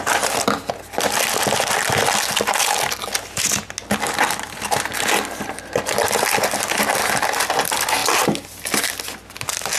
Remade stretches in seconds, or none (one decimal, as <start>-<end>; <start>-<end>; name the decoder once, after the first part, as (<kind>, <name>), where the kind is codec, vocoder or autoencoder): none